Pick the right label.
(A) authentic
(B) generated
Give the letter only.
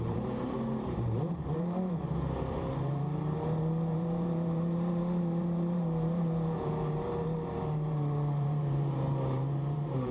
B